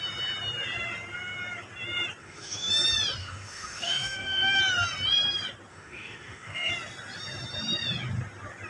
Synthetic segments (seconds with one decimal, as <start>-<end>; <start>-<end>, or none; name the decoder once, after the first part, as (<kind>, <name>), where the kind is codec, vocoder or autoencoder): 2.2-2.7 (autoencoder, DAC-VAE); 3.2-4.6; 5.7-6.7